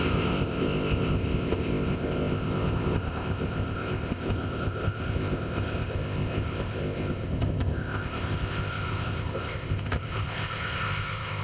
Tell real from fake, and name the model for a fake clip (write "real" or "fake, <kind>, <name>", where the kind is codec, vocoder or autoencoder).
fake, codec, ZipCodec